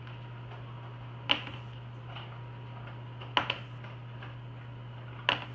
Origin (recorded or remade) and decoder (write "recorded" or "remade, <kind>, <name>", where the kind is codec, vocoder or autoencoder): recorded